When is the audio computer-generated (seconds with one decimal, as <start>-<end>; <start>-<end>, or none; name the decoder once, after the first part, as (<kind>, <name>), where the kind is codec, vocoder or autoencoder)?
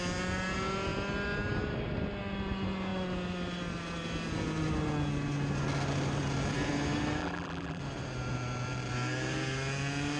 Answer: 7.2-7.8 (vocoder, BigVGAN v2)